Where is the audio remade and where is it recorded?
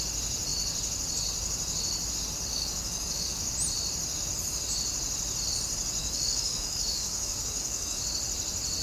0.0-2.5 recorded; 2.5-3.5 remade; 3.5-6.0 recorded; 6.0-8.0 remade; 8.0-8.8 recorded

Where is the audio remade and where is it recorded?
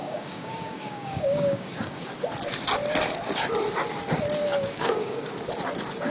0.0-2.1 remade; 2.1-4.4 recorded; 4.4-5.3 remade; 5.3-6.1 recorded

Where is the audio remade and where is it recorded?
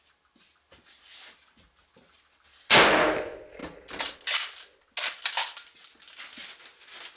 0.0-7.2 recorded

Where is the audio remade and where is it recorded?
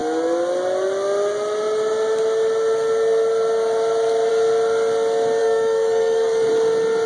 0.0-5.4 recorded; 5.4-6.5 remade; 6.5-7.1 recorded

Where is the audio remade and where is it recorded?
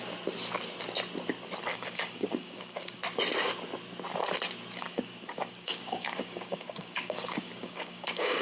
0.0-1.7 recorded; 1.7-3.0 remade; 3.0-4.8 recorded; 4.8-8.4 remade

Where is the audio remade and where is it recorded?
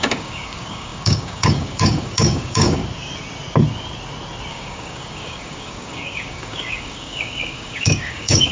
0.0-2.8 remade; 2.8-4.5 recorded; 4.5-8.5 remade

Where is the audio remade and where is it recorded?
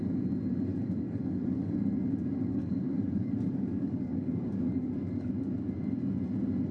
0.0-0.7 recorded; 0.7-1.7 remade; 1.7-2.5 recorded; 2.5-5.3 remade; 5.3-6.7 recorded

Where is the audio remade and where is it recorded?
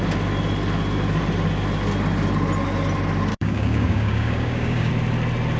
0.0-3.3 recorded; 3.3-4.9 remade; 4.9-5.6 recorded